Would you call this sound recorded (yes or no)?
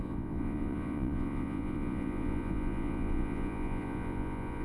no